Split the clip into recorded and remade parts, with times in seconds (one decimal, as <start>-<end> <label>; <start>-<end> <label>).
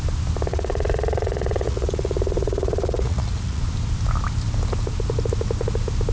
0.0-0.5 recorded; 0.5-3.6 remade; 3.6-6.1 recorded